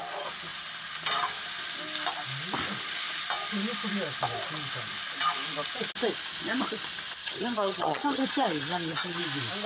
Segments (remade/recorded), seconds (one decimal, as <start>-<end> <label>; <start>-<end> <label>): 0.0-7.2 recorded; 7.2-9.2 remade; 9.2-9.7 recorded